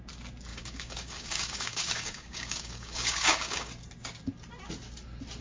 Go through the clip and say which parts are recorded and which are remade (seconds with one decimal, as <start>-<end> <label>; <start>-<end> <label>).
0.0-0.5 recorded; 0.5-3.7 remade; 3.7-5.4 recorded